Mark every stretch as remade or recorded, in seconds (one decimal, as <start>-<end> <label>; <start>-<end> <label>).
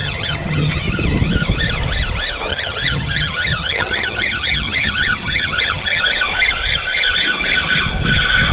0.0-0.8 remade; 0.8-2.5 recorded; 2.5-6.0 remade; 6.0-8.5 recorded